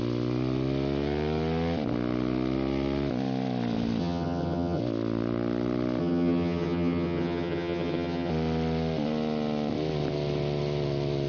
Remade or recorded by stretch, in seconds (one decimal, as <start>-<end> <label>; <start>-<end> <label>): 0.0-4.0 recorded; 4.0-4.8 remade; 4.8-6.0 recorded; 6.0-8.3 remade; 8.3-11.3 recorded